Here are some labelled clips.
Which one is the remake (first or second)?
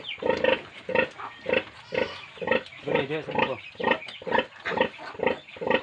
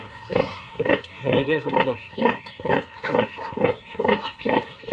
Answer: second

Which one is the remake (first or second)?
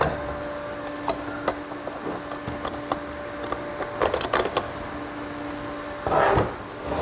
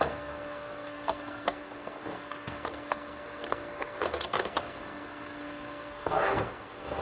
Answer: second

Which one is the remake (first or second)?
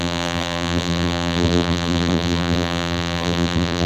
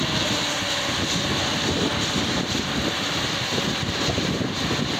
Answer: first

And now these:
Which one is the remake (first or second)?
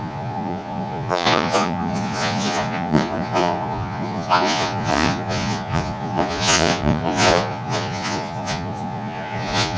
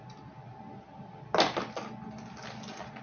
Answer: first